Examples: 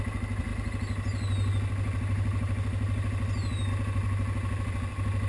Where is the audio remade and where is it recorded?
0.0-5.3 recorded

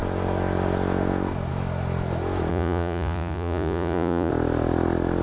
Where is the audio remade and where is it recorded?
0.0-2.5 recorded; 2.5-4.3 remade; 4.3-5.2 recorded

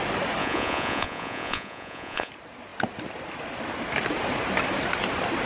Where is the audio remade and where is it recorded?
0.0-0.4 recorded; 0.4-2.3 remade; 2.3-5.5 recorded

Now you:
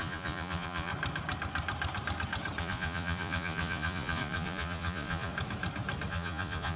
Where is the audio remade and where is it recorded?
0.0-0.9 remade; 0.9-2.6 recorded; 2.6-5.3 remade; 5.3-6.1 recorded; 6.1-6.8 remade